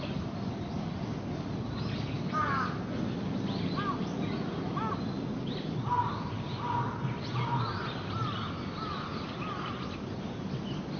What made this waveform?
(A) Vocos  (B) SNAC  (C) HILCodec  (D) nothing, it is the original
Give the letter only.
D